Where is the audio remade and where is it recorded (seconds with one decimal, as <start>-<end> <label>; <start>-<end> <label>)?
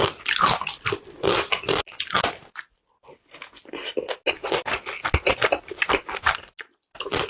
0.0-7.3 recorded